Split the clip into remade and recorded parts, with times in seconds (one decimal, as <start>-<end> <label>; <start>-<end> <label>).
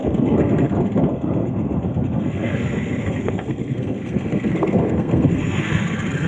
0.0-6.3 remade